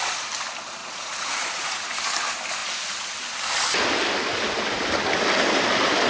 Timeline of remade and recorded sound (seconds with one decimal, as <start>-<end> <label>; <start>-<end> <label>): 0.0-0.8 recorded; 0.8-1.9 remade; 1.9-6.1 recorded